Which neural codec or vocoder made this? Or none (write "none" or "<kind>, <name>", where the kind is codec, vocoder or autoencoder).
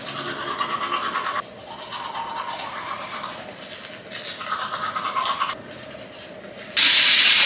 none